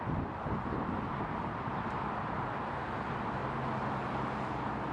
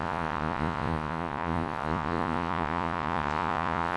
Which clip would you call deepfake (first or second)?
second